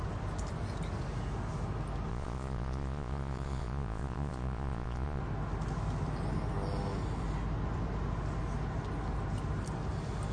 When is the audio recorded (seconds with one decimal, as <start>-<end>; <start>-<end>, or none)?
0.0-2.1; 5.2-10.3